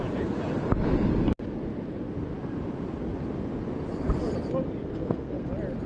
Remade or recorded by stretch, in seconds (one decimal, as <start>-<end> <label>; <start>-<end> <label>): 0.0-4.9 recorded; 4.9-5.5 remade; 5.5-5.9 recorded